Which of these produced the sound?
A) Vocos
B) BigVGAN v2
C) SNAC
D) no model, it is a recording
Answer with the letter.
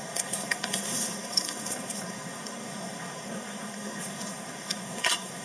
C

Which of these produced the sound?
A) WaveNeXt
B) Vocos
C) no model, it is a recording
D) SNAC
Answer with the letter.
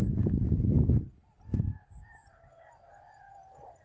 C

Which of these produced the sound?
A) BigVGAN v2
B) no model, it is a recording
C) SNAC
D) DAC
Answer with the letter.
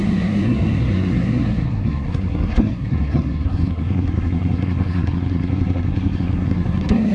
C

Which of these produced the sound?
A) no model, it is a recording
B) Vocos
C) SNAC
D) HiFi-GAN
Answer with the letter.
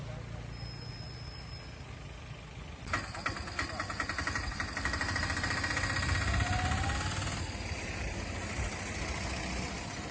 A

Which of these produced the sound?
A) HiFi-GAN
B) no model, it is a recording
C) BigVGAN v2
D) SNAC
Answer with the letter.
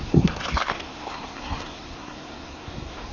D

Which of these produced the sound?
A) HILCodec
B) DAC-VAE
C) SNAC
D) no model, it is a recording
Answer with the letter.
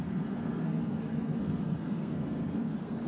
C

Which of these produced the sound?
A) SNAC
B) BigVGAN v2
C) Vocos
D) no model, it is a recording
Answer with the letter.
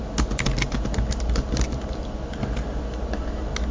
D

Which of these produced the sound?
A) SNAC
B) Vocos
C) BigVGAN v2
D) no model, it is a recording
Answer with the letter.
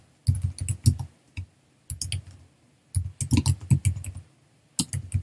D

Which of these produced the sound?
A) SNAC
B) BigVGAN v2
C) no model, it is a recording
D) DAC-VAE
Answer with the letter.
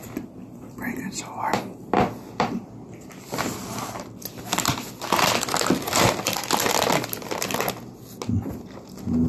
C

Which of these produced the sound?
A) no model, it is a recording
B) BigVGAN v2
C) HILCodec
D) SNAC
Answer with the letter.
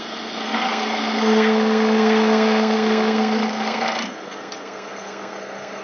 D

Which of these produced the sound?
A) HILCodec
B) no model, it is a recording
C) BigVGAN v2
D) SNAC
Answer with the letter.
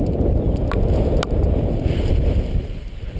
B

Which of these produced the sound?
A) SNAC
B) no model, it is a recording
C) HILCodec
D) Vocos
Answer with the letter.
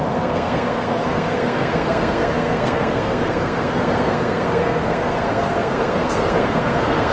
A